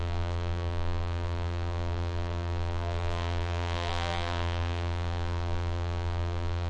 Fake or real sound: fake